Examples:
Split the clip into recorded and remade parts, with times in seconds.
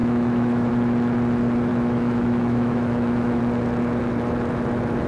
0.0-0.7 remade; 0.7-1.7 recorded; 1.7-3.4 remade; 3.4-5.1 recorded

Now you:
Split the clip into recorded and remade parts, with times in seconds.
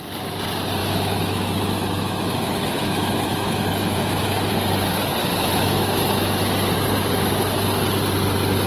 0.0-0.8 recorded; 0.8-4.5 remade; 4.5-5.2 recorded; 5.2-6.7 remade; 6.7-8.7 recorded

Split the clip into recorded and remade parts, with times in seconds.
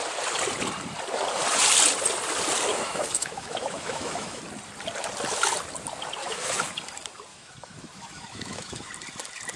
0.0-2.7 recorded; 2.7-4.4 remade; 4.4-6.2 recorded; 6.2-6.7 remade; 6.7-7.3 recorded; 7.3-8.9 remade; 8.9-9.6 recorded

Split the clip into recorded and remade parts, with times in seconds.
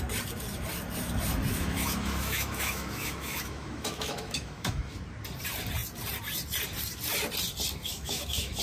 0.0-1.5 recorded; 1.5-4.9 remade; 4.9-7.9 recorded; 7.9-8.6 remade